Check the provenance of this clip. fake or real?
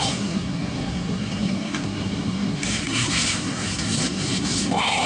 fake